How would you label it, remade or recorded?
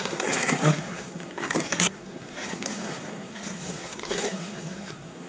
remade